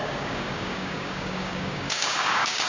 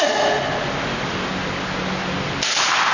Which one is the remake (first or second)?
first